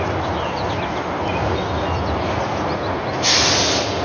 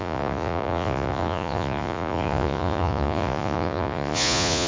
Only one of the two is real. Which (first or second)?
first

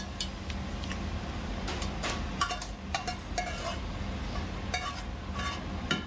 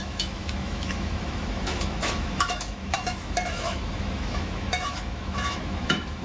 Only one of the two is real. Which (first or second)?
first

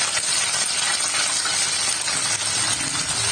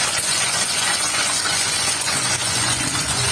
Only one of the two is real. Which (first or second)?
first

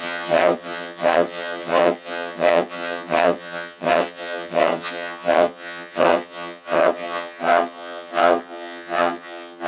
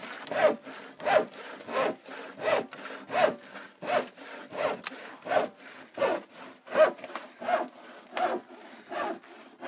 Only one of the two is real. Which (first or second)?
second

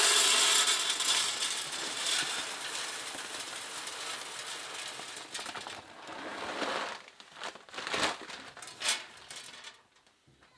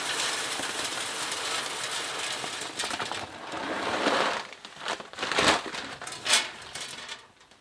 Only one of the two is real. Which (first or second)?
first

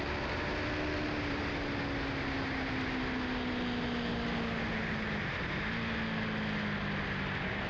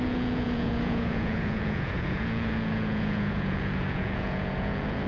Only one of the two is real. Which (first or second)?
first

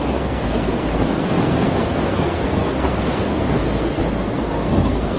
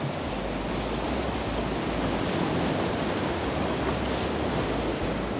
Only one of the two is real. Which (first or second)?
second